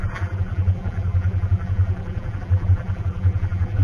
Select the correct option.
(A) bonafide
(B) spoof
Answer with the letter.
B